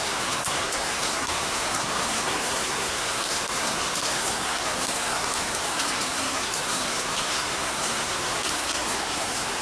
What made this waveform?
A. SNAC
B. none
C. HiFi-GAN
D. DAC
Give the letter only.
A